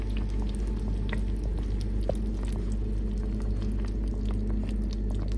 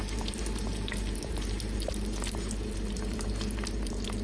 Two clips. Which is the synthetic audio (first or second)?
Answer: second